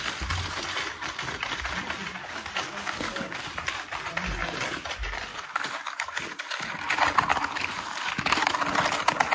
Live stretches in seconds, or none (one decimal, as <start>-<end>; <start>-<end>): 0.0-2.2; 3.5-5.3; 6.2-7.3; 8.5-9.3